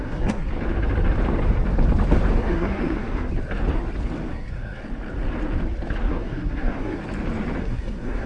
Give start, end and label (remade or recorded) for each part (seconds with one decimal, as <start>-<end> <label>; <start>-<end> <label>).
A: 0.0-0.5 remade; 0.5-2.4 recorded; 2.4-3.3 remade; 3.3-4.3 recorded; 4.3-4.8 remade; 4.8-6.1 recorded; 6.1-7.0 remade; 7.0-7.6 recorded; 7.6-8.3 remade